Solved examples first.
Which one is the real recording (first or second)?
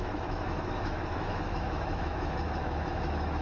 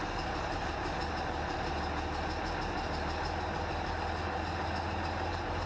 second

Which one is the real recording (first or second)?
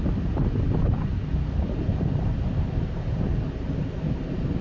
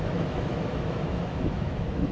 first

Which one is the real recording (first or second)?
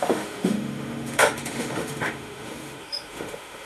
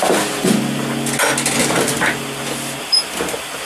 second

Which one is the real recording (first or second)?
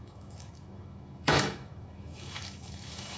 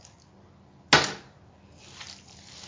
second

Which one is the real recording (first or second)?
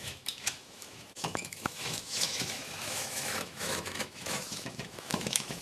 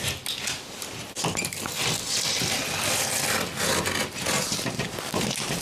second